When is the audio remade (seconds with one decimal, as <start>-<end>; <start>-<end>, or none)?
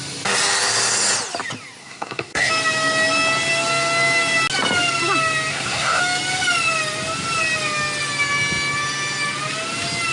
1.8-2.5; 5.5-6.0